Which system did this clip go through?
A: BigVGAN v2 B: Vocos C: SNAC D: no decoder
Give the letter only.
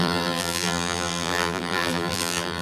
A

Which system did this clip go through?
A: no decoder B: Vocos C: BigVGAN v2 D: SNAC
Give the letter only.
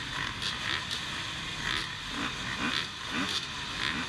A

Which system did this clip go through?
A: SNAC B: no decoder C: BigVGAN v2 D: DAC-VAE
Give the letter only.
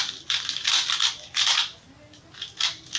B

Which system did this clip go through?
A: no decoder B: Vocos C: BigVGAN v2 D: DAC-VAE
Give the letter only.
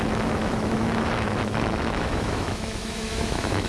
D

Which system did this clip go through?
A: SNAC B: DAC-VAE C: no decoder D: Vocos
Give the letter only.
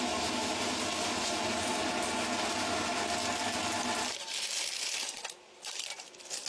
C